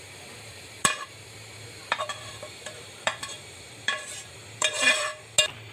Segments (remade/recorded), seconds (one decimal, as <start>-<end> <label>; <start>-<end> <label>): 0.0-5.1 remade; 5.1-5.7 recorded

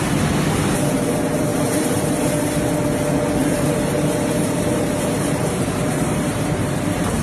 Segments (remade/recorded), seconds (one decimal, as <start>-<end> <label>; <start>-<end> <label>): 0.0-1.5 recorded; 1.5-2.3 remade; 2.3-3.4 recorded; 3.4-7.2 remade

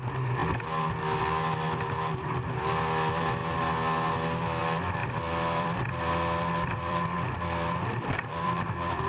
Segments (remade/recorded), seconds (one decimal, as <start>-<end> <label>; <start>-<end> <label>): 0.0-5.0 recorded; 5.0-9.1 remade

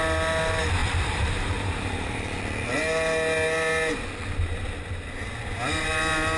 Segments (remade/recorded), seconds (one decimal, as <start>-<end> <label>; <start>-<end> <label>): 0.0-0.8 recorded; 0.8-2.4 remade; 2.4-6.4 recorded

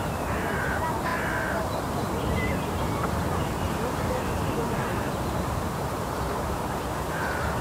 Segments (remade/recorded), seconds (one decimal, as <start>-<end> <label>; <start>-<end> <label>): 0.0-1.1 remade; 1.1-1.8 recorded; 1.8-7.6 remade

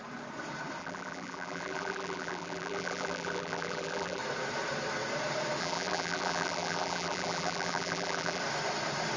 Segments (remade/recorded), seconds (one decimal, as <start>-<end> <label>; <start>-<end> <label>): 0.0-0.8 recorded; 0.8-4.2 remade; 4.2-5.6 recorded; 5.6-8.4 remade; 8.4-9.2 recorded